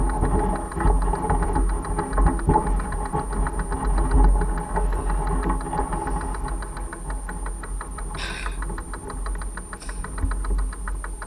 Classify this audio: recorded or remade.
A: recorded